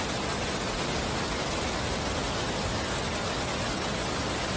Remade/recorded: recorded